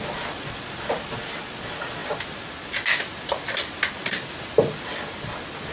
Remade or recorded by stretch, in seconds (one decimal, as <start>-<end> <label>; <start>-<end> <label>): 0.0-5.7 recorded